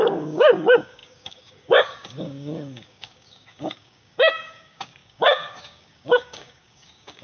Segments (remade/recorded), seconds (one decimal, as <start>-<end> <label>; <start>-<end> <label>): 0.0-7.2 remade